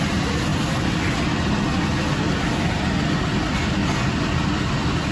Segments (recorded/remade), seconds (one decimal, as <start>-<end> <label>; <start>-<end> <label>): 0.0-5.1 recorded